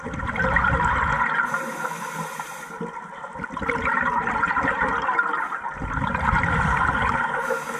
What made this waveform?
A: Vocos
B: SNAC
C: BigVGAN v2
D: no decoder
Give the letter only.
D